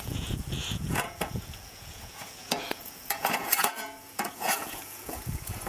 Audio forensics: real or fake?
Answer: fake